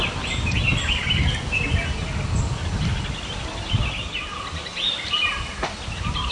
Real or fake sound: real